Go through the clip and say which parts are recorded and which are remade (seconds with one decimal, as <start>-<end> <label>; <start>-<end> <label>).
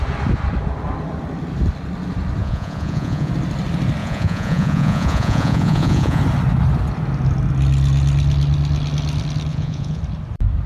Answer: 0.0-2.4 recorded; 2.4-3.3 remade; 3.3-4.0 recorded; 4.0-6.2 remade; 6.2-9.5 recorded; 9.5-10.0 remade; 10.0-10.7 recorded